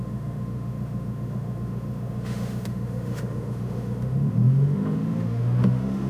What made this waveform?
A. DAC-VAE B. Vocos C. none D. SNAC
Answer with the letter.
A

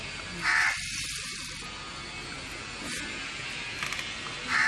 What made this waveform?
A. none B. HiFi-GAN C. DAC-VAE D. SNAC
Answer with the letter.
A